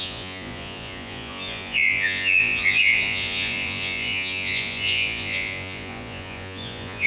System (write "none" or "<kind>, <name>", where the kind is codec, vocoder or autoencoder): vocoder, Vocos